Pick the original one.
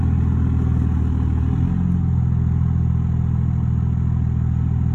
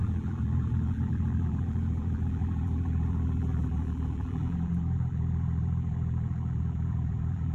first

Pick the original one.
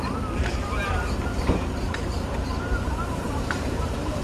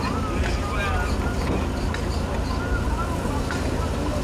second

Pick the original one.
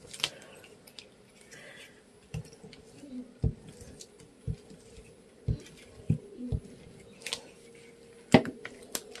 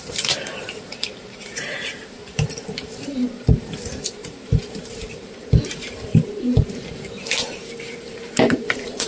first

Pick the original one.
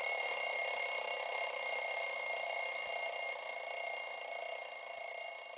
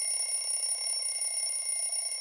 first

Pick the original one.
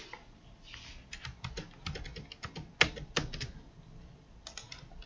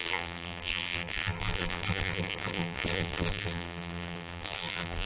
first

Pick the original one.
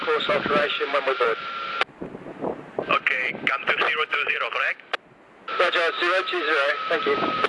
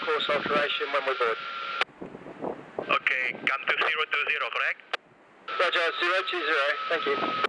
second